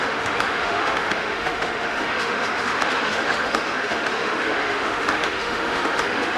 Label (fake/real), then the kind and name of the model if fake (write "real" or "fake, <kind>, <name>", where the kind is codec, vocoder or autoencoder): fake, autoencoder, DAC-VAE